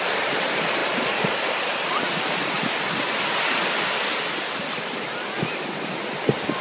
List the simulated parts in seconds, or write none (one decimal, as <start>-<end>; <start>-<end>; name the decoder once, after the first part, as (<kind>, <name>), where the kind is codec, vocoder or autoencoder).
none